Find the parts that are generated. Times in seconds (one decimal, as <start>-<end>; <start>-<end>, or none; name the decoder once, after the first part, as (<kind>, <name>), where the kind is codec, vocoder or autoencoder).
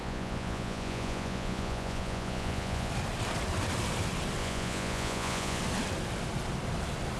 0.0-2.9 (vocoder, Vocos); 4.4-5.6